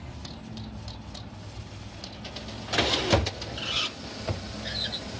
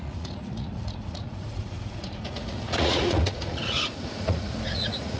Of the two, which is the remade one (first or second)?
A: second